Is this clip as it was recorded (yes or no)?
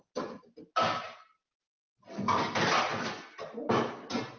yes